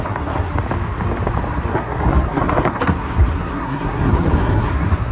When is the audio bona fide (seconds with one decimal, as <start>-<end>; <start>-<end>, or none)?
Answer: 0.5-1.7